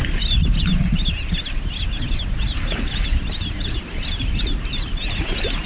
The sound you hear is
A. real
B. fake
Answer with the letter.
A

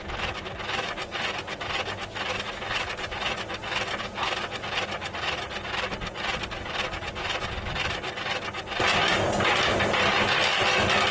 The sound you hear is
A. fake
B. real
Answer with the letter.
B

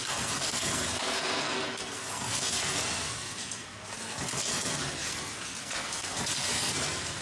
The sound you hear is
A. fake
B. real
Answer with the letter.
A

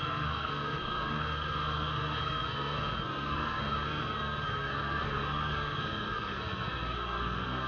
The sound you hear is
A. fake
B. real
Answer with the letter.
A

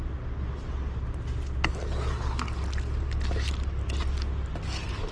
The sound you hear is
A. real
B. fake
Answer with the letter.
A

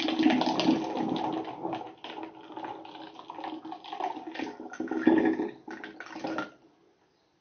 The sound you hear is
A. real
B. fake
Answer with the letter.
A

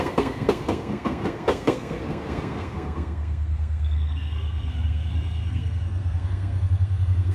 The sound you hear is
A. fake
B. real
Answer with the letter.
A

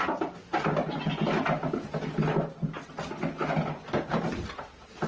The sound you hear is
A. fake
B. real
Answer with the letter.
B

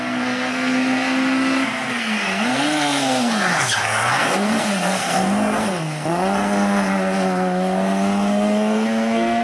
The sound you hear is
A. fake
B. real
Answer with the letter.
A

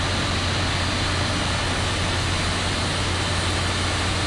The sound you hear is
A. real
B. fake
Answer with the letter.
A